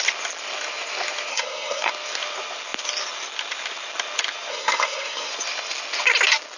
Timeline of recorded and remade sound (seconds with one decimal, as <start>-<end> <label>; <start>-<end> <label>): 0.0-1.3 recorded; 1.3-1.9 remade; 1.9-4.5 recorded; 4.5-5.3 remade; 5.3-6.6 recorded